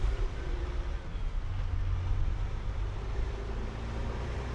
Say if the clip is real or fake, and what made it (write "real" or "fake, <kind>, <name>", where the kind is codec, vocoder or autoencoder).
real